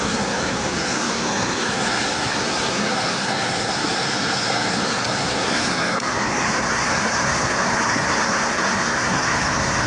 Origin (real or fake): fake